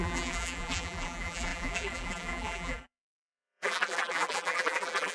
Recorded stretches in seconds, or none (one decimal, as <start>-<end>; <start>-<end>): none